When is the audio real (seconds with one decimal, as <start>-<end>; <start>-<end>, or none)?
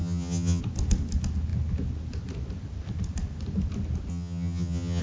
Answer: 0.6-4.1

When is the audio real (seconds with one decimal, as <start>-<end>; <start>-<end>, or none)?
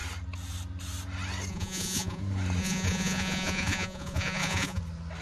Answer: 0.0-1.5; 2.2-2.6; 4.8-5.2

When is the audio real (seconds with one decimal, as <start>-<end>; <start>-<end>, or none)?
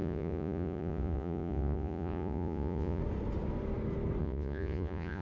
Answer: 3.0-4.2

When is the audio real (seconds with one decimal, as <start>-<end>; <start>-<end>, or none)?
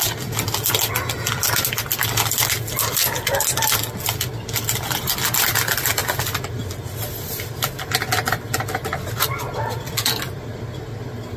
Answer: 0.0-11.4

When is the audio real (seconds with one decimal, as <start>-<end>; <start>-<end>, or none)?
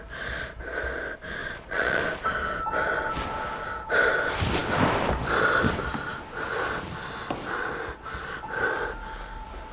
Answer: 0.0-1.4; 2.0-9.7